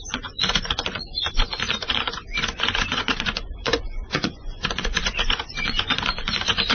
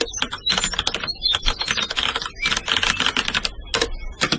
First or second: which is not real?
first